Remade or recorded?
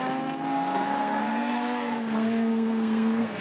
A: remade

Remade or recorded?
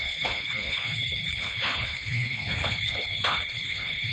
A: remade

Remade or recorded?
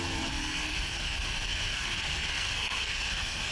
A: remade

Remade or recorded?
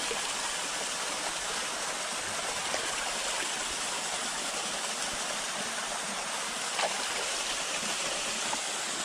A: recorded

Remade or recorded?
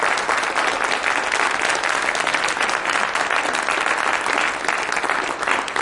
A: recorded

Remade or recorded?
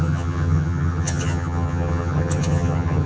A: remade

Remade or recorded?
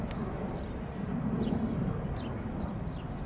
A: recorded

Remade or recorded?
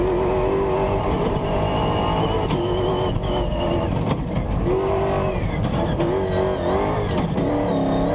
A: recorded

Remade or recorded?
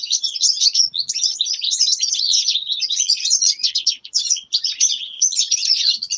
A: remade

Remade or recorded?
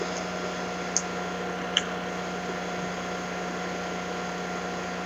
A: recorded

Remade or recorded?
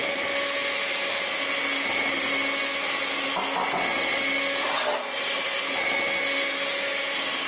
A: recorded